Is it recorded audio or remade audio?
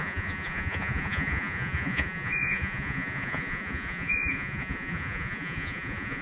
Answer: remade